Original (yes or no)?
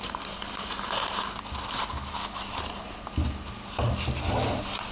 yes